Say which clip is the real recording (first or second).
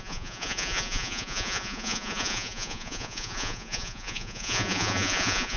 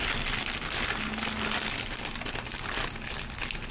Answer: second